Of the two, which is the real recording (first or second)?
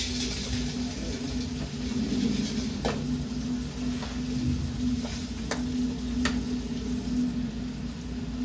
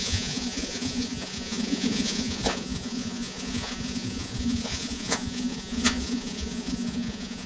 first